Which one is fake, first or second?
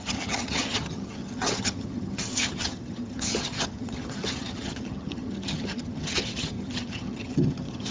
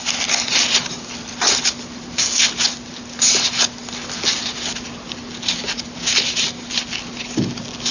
first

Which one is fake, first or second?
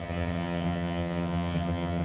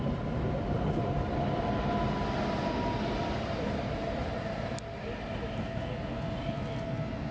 first